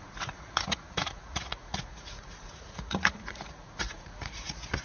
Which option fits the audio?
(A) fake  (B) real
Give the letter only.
A